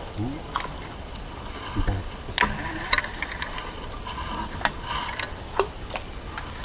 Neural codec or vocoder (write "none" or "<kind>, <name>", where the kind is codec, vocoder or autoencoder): none